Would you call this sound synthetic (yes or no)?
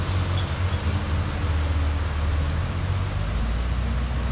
no